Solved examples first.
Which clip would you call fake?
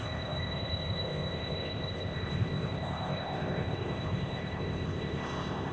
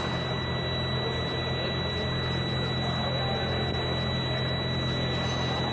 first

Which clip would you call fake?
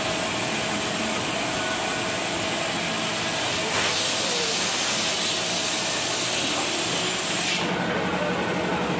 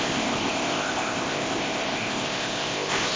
second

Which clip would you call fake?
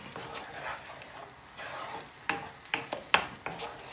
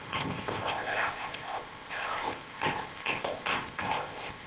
second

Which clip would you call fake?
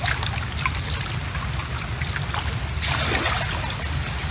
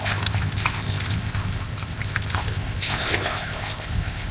second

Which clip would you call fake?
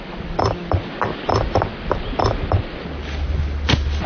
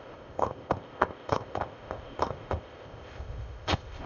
second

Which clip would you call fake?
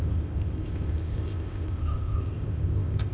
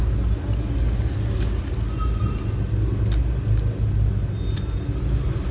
first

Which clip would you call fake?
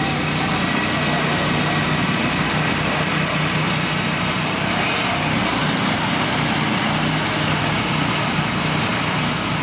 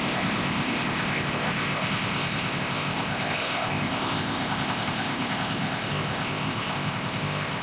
second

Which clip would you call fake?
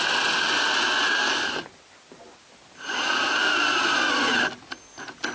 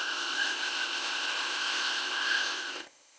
second